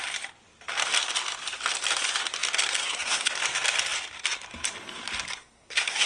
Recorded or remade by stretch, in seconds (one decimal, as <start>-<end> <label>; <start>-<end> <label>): 0.0-2.8 recorded; 2.8-3.3 remade; 3.3-5.4 recorded; 5.4-6.1 remade